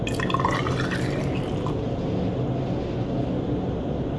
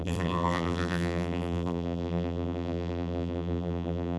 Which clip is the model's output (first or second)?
second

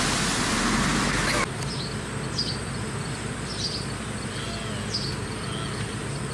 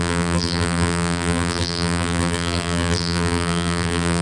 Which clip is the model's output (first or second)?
second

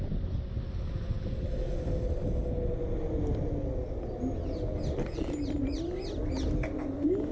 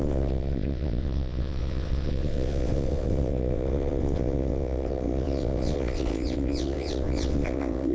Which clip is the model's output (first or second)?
second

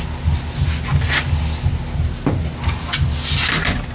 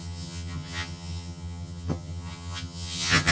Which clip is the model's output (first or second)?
second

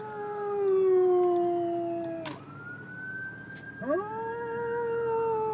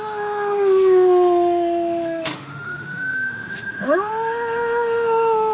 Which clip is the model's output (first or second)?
second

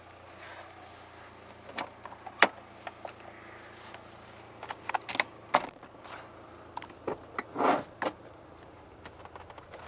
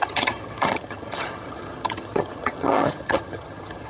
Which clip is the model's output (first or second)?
second